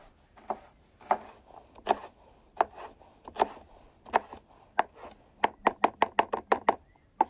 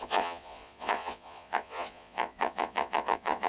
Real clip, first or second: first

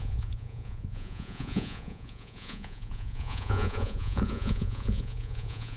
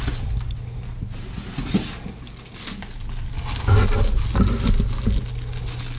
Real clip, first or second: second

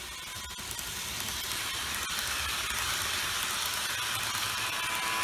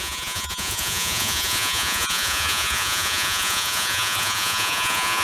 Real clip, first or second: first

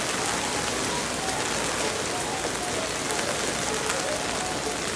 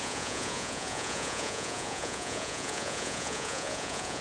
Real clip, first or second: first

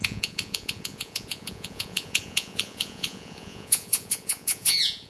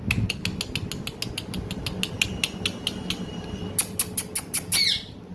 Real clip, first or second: second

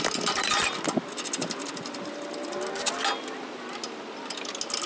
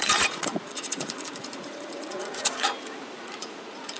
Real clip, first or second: first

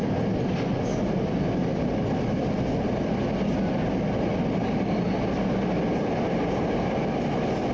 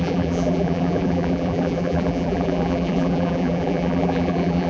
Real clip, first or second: first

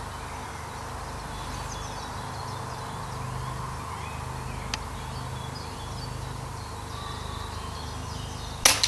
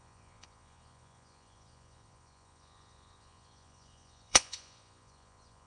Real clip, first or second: first